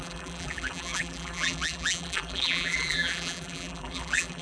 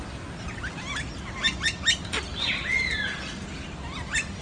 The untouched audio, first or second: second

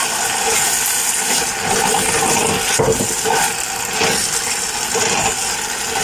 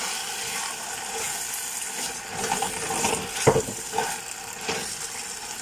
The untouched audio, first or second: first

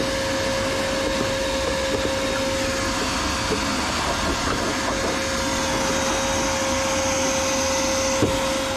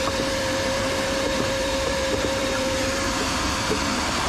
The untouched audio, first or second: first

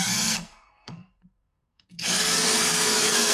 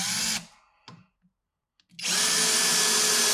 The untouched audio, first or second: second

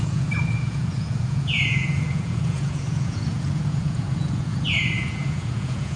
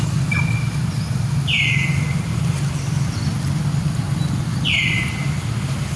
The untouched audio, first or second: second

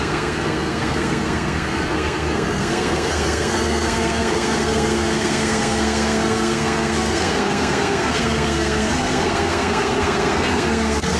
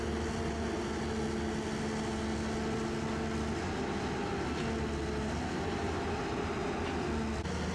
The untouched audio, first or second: second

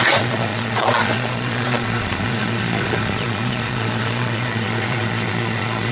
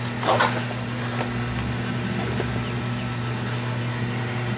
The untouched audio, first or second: second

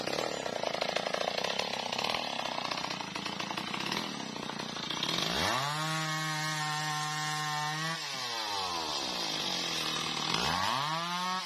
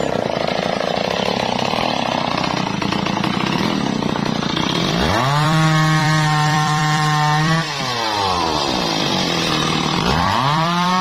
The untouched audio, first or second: first